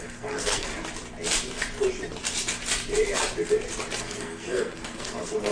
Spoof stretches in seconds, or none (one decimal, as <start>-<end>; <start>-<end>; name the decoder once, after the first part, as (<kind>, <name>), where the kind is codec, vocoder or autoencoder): 0.0-0.7 (codec, SNAC); 4.0-5.5